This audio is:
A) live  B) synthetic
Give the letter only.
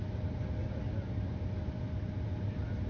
A